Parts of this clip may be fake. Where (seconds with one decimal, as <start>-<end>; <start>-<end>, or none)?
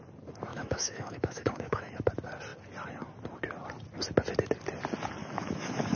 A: 0.5-1.9; 5.2-6.0